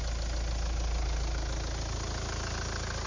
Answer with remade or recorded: recorded